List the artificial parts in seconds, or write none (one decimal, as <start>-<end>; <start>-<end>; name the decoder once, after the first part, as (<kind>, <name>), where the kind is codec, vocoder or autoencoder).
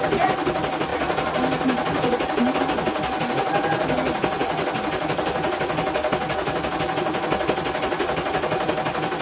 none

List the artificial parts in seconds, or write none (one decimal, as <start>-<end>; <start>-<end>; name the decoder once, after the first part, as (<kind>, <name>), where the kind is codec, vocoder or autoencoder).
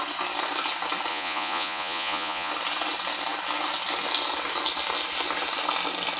1.1-2.5 (vocoder, Vocos)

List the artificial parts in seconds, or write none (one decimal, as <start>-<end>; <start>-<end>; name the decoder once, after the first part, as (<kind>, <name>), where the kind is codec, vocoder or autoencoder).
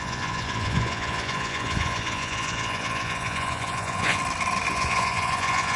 0.0-4.2 (vocoder, Vocos); 4.7-5.8